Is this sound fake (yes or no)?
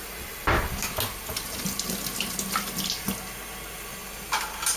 no